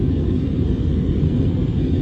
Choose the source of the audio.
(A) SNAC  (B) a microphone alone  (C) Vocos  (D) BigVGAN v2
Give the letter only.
A